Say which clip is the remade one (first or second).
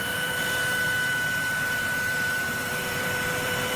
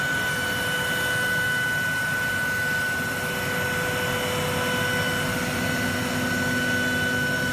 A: first